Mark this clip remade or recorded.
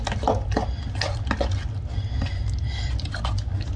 recorded